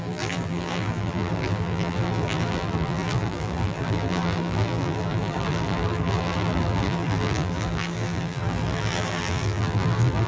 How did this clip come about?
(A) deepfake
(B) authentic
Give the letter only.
A